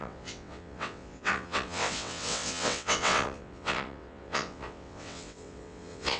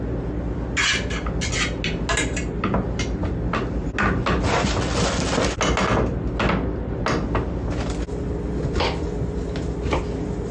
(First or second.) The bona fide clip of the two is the second